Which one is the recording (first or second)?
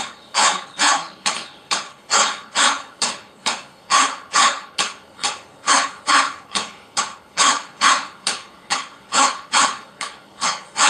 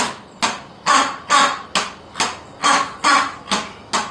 second